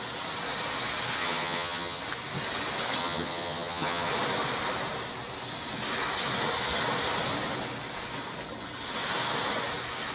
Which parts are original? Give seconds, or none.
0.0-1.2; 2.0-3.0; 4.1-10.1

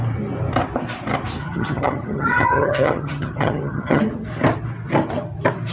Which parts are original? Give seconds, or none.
0.0-1.4; 4.0-5.7

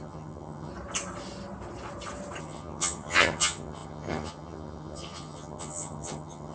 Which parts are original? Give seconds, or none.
0.7-2.4

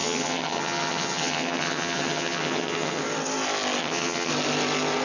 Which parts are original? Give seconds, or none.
3.0-3.8; 4.3-5.0

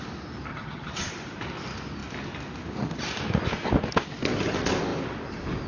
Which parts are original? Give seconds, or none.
0.0-0.5; 1.1-5.7

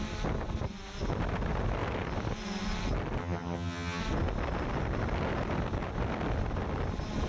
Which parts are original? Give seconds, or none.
0.0-3.2; 4.0-7.3